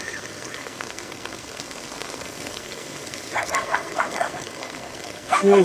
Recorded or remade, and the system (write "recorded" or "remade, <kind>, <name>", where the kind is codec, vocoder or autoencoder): remade, codec, SNAC